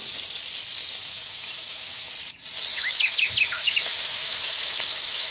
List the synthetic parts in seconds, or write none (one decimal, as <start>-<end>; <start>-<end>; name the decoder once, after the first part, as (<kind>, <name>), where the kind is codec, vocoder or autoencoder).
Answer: 1.0-2.1 (autoencoder, DAC-VAE); 2.7-5.3